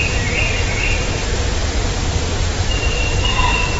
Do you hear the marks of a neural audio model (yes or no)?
no